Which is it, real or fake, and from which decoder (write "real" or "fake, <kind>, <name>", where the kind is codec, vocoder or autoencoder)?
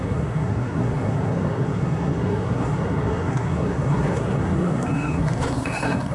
fake, codec, SNAC